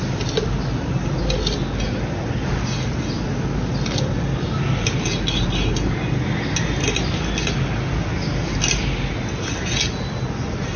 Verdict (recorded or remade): recorded